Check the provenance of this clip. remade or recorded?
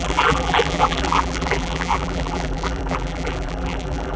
remade